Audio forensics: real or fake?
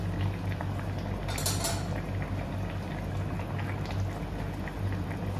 real